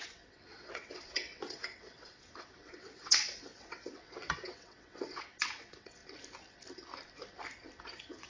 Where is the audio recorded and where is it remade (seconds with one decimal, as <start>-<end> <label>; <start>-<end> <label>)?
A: 0.0-6.0 remade; 6.0-7.8 recorded; 7.8-8.3 remade